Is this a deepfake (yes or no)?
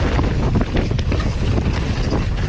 no